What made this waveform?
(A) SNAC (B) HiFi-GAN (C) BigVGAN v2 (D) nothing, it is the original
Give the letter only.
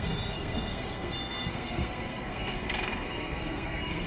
A